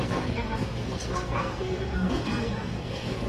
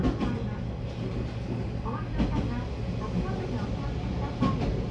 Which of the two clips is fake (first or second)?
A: first